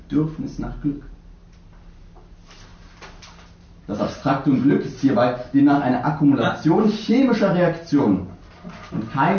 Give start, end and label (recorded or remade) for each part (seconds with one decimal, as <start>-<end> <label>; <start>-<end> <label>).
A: 0.0-9.4 recorded

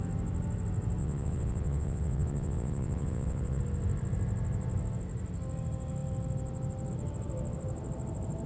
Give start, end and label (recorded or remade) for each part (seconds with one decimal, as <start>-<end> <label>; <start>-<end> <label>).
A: 0.0-1.0 recorded; 1.0-3.6 remade; 3.6-8.5 recorded

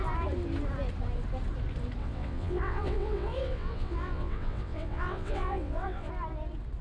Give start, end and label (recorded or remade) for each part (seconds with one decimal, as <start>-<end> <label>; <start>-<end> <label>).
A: 0.0-2.0 recorded; 2.0-6.1 remade; 6.1-6.8 recorded

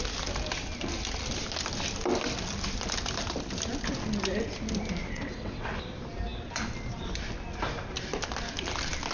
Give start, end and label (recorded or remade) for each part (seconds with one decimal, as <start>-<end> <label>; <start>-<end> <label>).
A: 0.0-5.0 recorded; 5.0-5.8 remade; 5.8-9.1 recorded